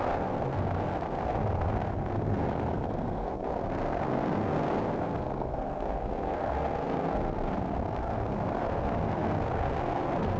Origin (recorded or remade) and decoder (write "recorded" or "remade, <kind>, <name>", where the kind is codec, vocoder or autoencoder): remade, codec, SNAC